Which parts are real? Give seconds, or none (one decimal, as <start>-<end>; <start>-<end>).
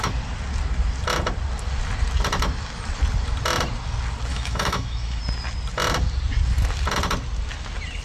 0.0-4.3; 5.2-8.0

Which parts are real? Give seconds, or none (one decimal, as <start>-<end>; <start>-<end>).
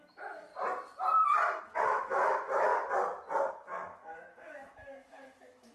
0.5-1.6; 2.7-3.5